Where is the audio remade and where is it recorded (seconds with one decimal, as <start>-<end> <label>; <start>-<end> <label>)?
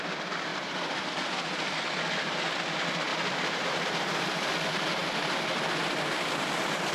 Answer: 0.0-0.5 recorded; 0.5-1.8 remade; 1.8-3.1 recorded; 3.1-4.5 remade; 4.5-5.0 recorded; 5.0-5.5 remade; 5.5-6.9 recorded